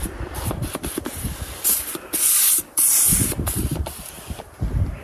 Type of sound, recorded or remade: remade